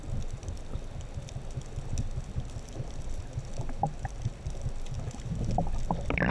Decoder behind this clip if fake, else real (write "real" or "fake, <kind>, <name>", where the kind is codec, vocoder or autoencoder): real